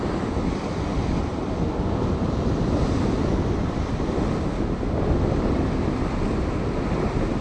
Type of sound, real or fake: real